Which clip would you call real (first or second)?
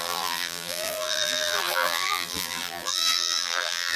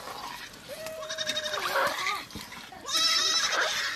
second